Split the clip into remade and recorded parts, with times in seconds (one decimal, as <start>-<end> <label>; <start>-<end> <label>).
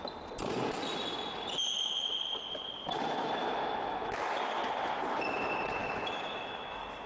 0.0-3.4 recorded; 3.4-4.6 remade; 4.6-5.8 recorded; 5.8-7.1 remade